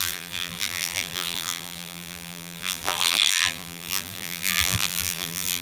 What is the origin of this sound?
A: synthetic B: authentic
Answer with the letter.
A